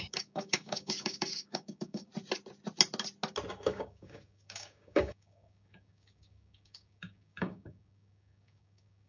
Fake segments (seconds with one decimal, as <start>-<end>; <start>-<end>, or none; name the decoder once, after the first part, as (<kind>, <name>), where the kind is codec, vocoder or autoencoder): 0.0-2.1 (codec, DAC); 3.5-9.1